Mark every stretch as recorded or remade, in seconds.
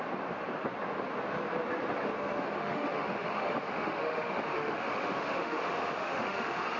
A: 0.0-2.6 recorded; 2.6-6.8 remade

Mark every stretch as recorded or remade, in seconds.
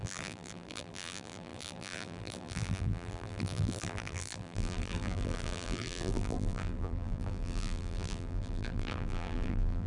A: 0.0-9.9 remade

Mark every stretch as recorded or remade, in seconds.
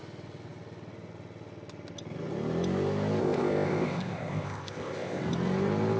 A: 0.0-3.2 recorded; 3.2-5.2 remade; 5.2-6.0 recorded